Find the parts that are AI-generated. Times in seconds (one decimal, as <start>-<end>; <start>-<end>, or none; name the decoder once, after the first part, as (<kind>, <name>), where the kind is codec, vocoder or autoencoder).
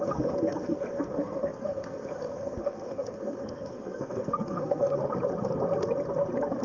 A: 0.0-5.0 (codec, SNAC)